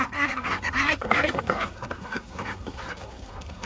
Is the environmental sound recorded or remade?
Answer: remade